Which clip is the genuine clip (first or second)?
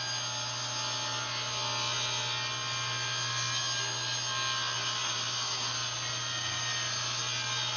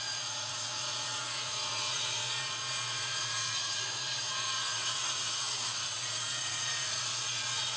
first